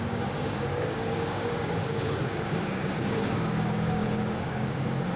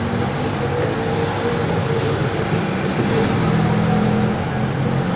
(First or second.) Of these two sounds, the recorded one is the second